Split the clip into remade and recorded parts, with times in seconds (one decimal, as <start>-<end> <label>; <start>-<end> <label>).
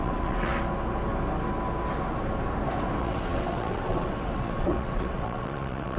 0.0-0.5 remade; 0.5-3.0 recorded; 3.0-6.0 remade